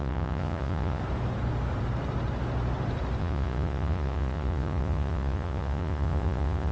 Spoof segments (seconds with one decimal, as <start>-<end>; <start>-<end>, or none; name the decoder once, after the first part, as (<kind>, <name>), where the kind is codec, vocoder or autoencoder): 0.0-1.0 (vocoder, Vocos); 3.2-6.7